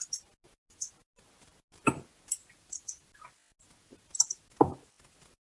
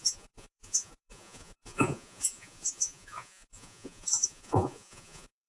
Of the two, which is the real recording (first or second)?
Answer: first